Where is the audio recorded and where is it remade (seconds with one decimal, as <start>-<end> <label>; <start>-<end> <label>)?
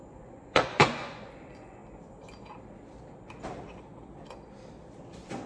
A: 0.0-1.8 remade; 1.8-5.1 recorded; 5.1-5.5 remade